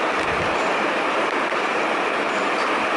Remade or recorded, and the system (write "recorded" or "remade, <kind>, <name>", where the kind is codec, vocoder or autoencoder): recorded